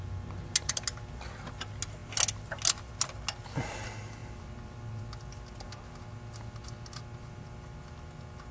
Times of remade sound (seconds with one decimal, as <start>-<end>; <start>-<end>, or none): none